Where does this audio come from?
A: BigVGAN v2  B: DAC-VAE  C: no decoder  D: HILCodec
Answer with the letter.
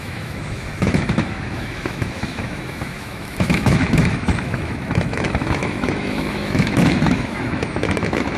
B